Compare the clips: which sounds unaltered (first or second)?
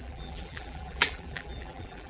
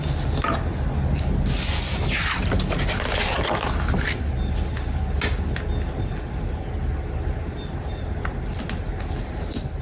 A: second